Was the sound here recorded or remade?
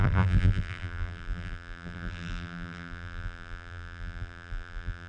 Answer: remade